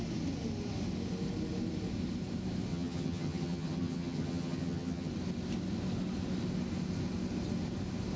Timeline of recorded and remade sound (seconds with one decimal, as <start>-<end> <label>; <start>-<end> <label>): 0.0-2.7 recorded; 2.7-5.1 remade; 5.1-8.2 recorded